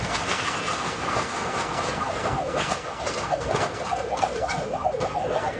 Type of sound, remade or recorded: remade